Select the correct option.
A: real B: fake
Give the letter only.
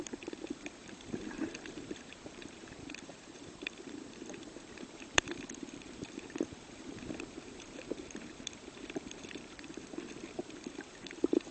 B